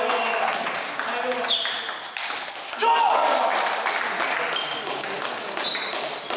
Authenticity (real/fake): real